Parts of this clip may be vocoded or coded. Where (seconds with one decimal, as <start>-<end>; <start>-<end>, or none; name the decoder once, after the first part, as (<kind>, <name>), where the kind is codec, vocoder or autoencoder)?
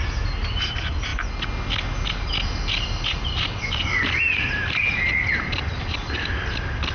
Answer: none